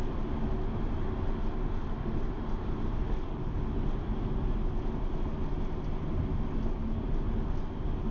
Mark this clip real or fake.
real